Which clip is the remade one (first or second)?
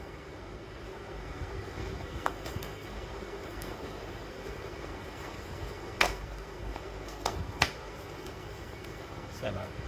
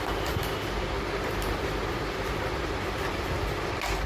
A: first